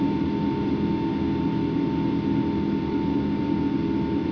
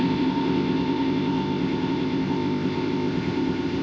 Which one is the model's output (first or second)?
second